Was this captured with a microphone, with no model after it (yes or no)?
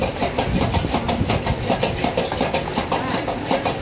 yes